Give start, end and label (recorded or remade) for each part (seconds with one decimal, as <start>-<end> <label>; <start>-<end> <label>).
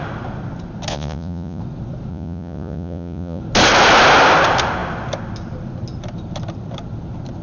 0.0-0.9 recorded; 0.9-1.6 remade; 1.6-2.1 recorded; 2.1-3.4 remade; 3.4-7.4 recorded